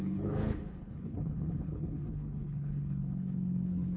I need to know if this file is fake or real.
fake